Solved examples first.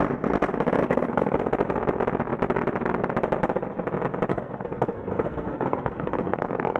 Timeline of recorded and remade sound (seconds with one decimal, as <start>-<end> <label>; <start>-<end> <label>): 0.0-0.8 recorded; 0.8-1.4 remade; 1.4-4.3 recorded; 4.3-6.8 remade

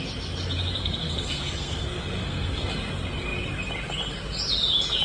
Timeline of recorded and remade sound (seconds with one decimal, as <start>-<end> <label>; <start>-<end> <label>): 0.0-0.8 recorded; 0.8-2.7 remade; 2.7-5.0 recorded

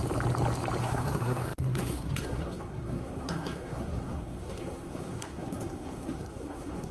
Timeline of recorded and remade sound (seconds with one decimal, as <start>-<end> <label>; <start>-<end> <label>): 0.0-0.8 recorded; 0.8-6.9 remade

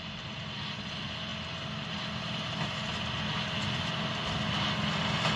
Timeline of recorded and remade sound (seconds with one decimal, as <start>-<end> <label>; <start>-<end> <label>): 0.0-5.4 recorded

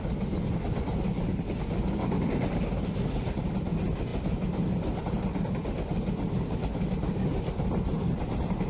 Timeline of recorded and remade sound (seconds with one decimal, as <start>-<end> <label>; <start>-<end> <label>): 0.0-8.7 recorded